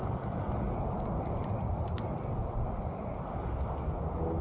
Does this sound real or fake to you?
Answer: real